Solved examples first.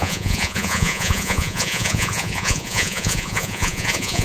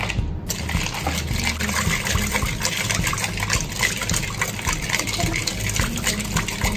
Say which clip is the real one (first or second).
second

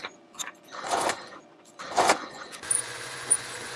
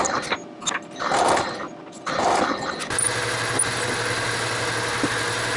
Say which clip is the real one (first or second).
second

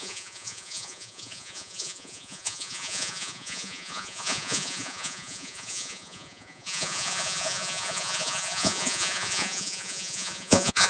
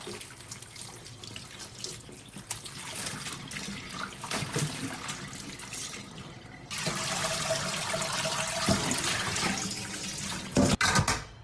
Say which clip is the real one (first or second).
second